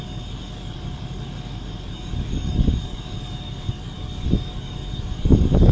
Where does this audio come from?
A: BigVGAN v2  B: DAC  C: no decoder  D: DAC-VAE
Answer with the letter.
B